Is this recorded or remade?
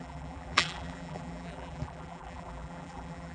remade